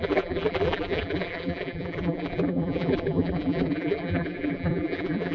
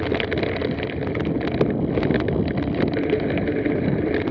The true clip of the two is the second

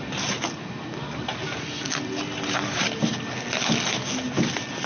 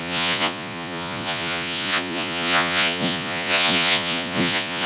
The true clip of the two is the first